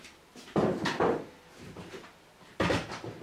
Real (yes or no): yes